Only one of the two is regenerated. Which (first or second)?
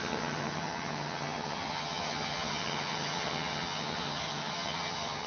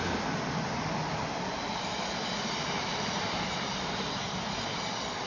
first